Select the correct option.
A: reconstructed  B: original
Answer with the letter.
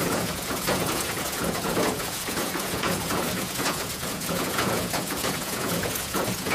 A